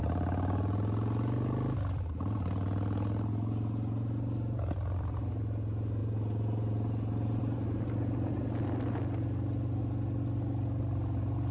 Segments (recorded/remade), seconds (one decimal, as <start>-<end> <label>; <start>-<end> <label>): 0.0-11.5 recorded